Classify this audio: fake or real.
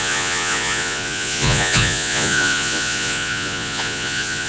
fake